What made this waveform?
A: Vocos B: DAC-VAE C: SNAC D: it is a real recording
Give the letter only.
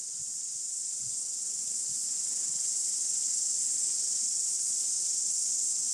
D